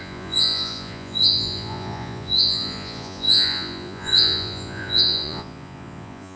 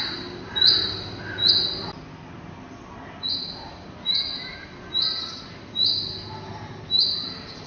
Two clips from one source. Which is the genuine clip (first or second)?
second